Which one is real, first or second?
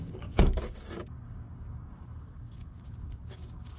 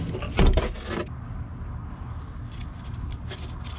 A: second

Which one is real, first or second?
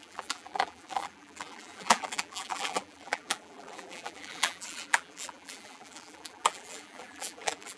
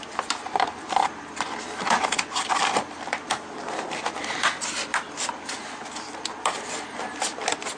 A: second